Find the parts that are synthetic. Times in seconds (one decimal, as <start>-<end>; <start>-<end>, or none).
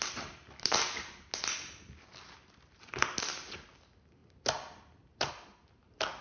none